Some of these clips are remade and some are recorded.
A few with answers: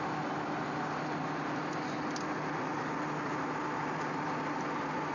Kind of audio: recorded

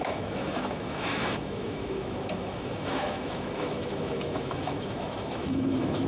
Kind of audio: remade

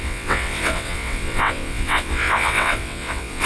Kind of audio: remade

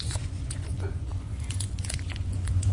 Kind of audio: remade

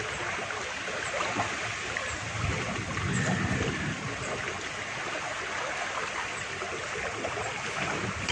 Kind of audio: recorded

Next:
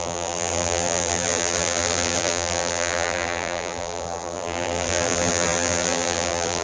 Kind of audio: remade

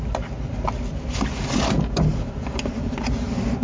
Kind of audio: recorded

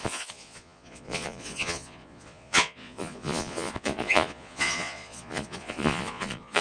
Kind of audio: remade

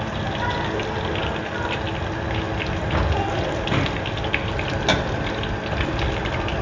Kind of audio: recorded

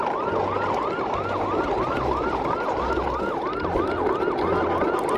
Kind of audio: recorded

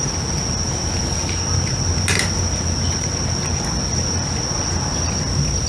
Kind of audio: recorded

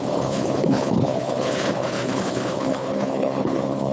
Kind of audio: remade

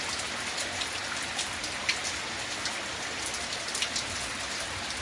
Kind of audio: recorded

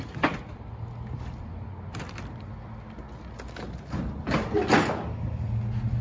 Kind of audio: recorded